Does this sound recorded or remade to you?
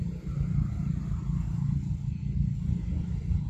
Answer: recorded